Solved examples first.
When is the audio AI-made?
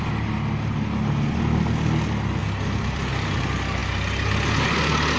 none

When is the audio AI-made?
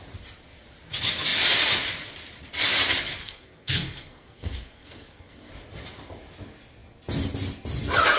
3.2-5.5 (codec, SNAC)